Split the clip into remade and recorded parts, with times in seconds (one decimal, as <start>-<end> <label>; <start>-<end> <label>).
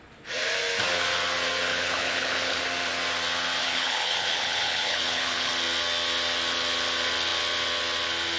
0.0-1.7 recorded; 1.7-2.6 remade; 2.6-3.6 recorded; 3.6-5.5 remade; 5.5-8.4 recorded